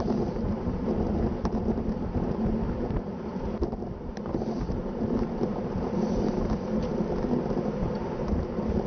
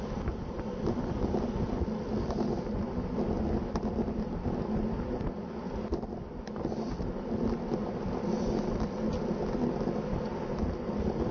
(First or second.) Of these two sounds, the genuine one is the second